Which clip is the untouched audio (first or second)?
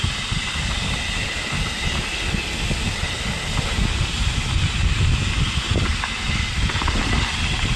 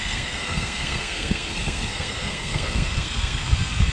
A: first